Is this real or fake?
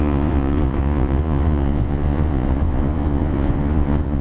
fake